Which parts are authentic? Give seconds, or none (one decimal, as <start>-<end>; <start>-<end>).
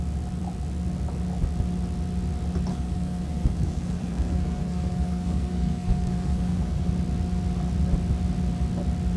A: 0.0-2.7; 6.9-9.2